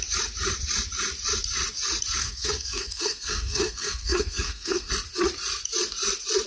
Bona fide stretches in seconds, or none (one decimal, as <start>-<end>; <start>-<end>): 0.0-2.2; 4.9-6.5